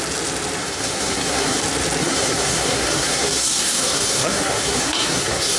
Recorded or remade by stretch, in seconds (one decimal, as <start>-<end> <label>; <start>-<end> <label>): 0.0-0.6 recorded; 0.6-1.6 remade; 1.6-2.0 recorded; 2.0-5.6 remade